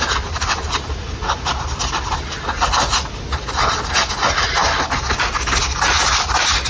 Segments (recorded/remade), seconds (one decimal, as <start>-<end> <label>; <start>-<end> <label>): 0.0-6.7 recorded